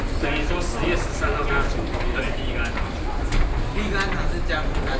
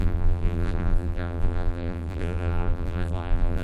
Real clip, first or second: first